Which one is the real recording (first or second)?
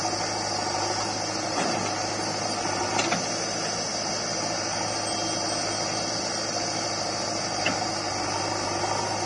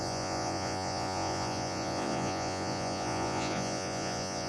first